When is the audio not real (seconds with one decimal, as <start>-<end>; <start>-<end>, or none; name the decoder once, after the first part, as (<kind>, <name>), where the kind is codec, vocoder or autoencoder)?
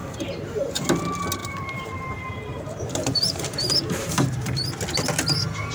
1.4-4.7 (vocoder, BigVGAN v2)